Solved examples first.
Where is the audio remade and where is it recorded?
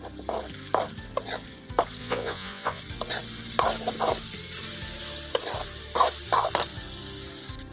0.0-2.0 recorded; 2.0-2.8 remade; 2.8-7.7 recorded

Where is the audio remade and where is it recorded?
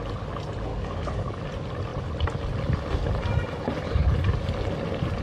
0.0-0.7 recorded; 0.7-1.4 remade; 1.4-5.2 recorded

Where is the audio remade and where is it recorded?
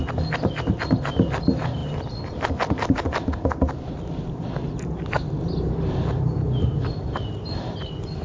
0.0-8.2 recorded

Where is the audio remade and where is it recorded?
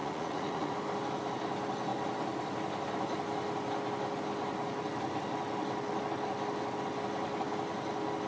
0.0-0.7 remade; 0.7-8.3 recorded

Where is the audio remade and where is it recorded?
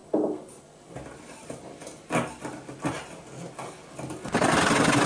0.0-5.1 recorded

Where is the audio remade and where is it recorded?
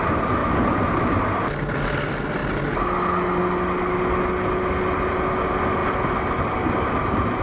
0.0-7.4 recorded